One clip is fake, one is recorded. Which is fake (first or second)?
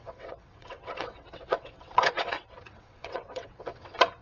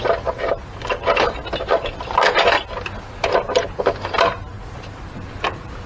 first